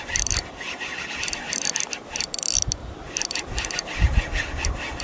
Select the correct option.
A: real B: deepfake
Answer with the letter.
A